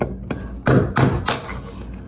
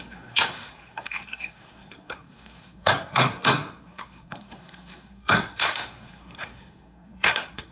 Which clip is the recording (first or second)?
first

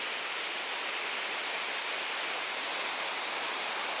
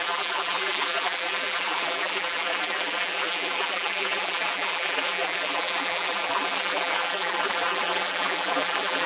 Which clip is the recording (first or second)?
first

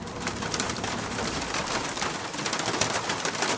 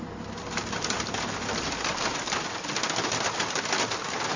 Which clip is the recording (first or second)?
second